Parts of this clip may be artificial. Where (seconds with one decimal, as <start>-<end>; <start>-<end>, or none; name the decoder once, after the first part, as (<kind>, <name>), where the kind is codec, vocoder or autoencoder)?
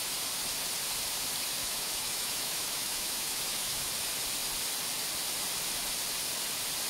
1.6-3.9 (autoencoder, DAC-VAE)